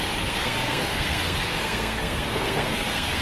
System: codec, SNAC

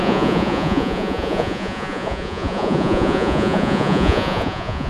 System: vocoder, Vocos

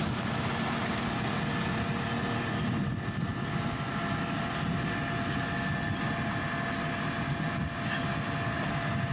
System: none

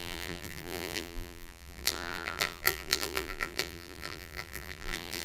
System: vocoder, BigVGAN v2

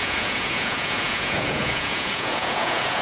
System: vocoder, Vocos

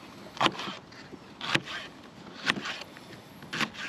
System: none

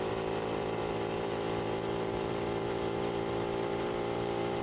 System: vocoder, BigVGAN v2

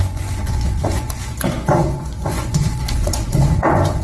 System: vocoder, Vocos